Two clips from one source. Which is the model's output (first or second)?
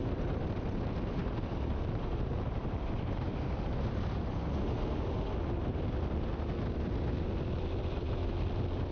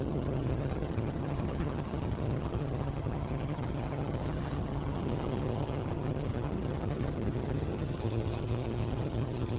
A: second